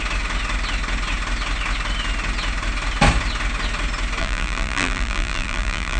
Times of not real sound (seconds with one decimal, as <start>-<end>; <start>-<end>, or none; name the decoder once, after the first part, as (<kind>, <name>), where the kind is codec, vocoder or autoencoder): 4.2-6.0 (vocoder, BigVGAN v2)

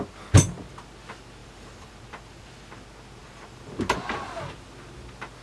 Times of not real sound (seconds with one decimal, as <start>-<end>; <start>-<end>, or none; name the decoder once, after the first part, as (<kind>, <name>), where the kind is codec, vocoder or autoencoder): 1.4-2.5 (vocoder, BigVGAN v2); 3.2-3.7

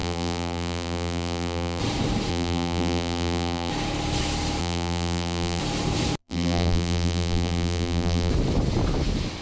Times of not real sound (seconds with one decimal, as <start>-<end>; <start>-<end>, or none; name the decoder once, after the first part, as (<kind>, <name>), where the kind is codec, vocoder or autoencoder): 0.0-1.8 (vocoder, BigVGAN v2); 2.3-3.7; 4.6-5.6; 6.2-8.3

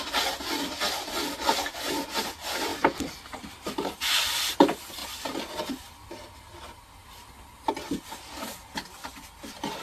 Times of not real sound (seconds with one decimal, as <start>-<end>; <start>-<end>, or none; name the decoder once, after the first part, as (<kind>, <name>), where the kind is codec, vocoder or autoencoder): 2.7-3.3 (vocoder, BigVGAN v2); 7.0-7.7

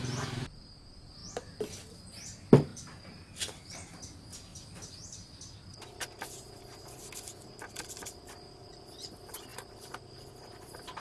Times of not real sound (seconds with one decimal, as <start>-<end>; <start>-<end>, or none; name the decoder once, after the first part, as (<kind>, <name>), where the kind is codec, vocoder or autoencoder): 2.7-3.3 (vocoder, BigVGAN v2)

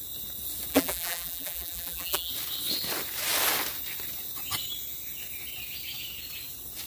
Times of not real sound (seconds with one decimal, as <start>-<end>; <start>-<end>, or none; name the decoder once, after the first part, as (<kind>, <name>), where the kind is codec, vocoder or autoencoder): 0.7-2.3 (vocoder, BigVGAN v2)

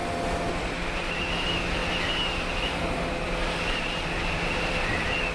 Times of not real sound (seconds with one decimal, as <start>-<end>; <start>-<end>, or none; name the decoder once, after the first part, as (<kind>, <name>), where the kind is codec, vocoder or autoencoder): none

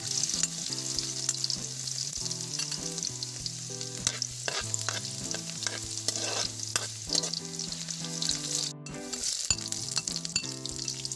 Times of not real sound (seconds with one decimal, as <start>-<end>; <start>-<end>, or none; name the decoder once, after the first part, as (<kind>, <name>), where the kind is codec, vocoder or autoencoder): none